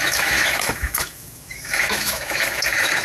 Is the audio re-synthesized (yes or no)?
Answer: yes